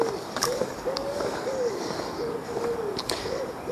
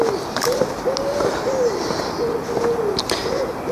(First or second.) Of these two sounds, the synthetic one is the first